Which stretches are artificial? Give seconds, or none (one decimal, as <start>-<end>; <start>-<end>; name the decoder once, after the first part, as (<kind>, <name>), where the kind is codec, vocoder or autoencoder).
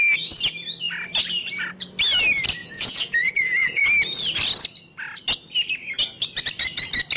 2.6-3.8 (vocoder, Vocos)